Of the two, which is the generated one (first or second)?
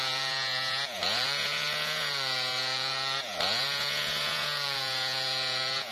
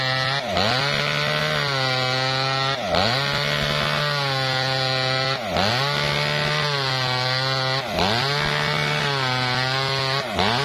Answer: first